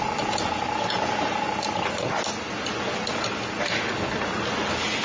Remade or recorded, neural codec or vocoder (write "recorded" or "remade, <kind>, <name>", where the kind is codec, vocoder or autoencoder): recorded